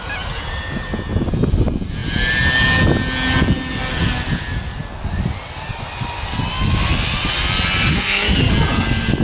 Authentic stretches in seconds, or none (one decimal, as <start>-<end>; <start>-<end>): 0.0-7.9; 8.5-9.2